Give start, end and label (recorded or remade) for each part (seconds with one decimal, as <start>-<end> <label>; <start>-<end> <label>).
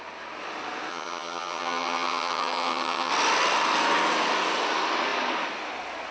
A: 0.0-0.9 recorded; 0.9-3.1 remade; 3.1-6.1 recorded